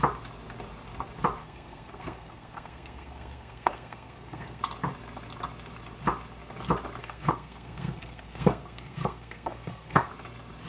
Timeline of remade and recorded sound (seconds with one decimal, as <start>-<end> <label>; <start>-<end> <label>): 0.0-1.4 recorded; 1.4-4.6 remade; 4.6-7.0 recorded; 7.0-10.1 remade; 10.1-10.7 recorded

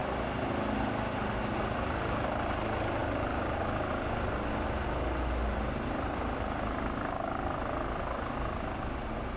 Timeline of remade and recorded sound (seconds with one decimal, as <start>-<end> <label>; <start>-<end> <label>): 0.0-9.4 recorded

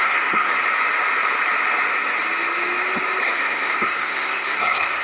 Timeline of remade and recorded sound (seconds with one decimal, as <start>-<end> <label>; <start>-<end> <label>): 0.0-0.5 remade; 0.5-3.2 recorded; 3.2-5.0 remade

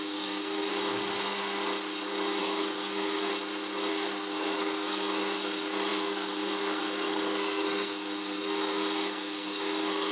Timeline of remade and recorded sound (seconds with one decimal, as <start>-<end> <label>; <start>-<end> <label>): 0.0-0.7 remade; 0.7-2.4 recorded; 2.4-3.3 remade; 3.3-3.9 recorded; 3.9-10.1 remade

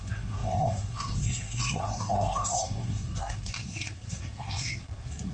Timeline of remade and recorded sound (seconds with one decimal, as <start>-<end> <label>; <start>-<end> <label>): 0.0-5.3 remade

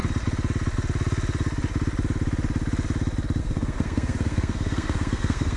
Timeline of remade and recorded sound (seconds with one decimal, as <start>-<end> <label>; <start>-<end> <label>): 0.0-3.4 recorded; 3.4-5.6 remade

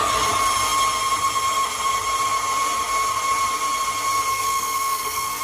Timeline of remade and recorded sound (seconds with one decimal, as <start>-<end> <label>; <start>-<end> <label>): 0.0-4.3 recorded; 4.3-5.4 remade